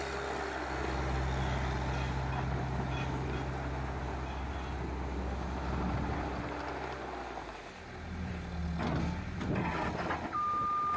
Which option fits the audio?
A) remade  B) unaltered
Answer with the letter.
B